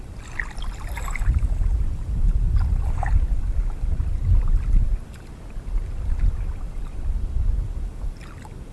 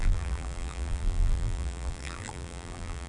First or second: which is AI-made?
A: second